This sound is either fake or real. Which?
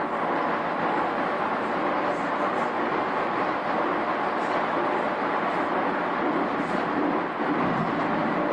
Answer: real